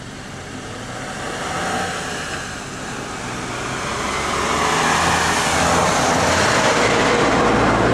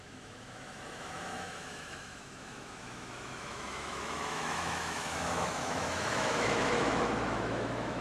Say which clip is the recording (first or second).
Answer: first